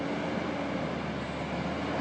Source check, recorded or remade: recorded